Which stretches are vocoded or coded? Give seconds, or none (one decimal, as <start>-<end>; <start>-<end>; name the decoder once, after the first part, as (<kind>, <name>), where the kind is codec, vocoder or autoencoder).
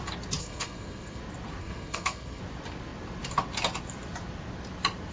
0.4-1.2 (codec, SNAC); 1.6-2.4